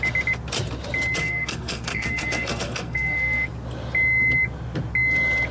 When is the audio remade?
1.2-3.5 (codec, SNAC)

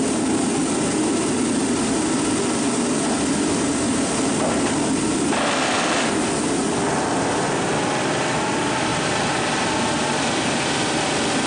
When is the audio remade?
8.9-11.0 (vocoder, BigVGAN v2)

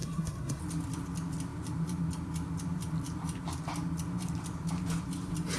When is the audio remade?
0.0-0.6 (codec, SNAC)

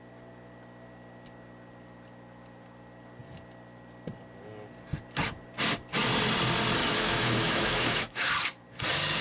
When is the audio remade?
6.8-8.3 (autoencoder, DAC-VAE)

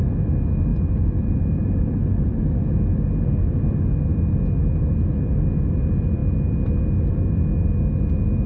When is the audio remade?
0.7-2.4 (vocoder, BigVGAN v2)

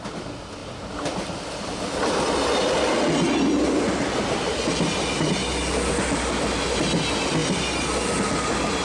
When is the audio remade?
none

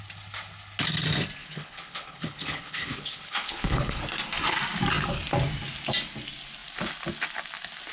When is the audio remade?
1.4-4.0 (codec, HILCodec)